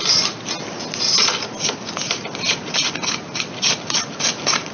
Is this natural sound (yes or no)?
yes